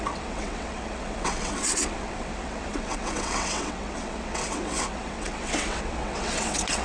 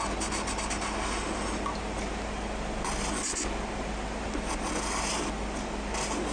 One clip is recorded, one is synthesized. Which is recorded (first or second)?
second